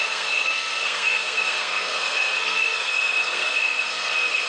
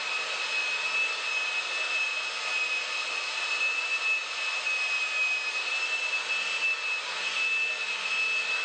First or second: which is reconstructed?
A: first